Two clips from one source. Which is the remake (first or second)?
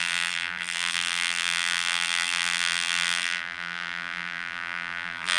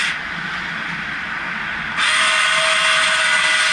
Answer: first